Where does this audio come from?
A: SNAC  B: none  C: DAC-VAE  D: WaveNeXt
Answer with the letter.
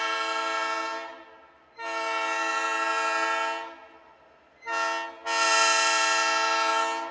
B